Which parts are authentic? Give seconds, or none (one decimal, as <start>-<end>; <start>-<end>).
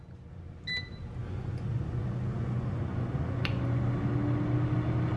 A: 0.0-1.2; 3.6-5.2